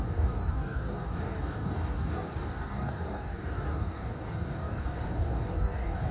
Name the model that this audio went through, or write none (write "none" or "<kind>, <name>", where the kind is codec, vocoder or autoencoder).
codec, DAC